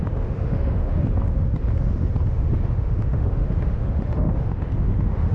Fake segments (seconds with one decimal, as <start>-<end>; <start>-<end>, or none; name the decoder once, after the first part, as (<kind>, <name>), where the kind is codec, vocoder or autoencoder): 0.0-0.9 (autoencoder, DAC-VAE); 2.3-5.3